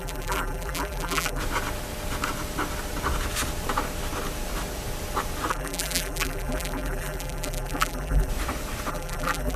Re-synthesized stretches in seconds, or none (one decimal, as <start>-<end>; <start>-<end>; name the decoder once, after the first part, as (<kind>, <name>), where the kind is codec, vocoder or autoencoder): 0.0-1.4 (vocoder, BigVGAN v2); 5.5-8.3; 8.9-9.6